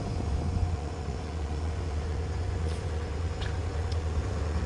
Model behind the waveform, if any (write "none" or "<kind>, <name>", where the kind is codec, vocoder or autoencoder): vocoder, Vocos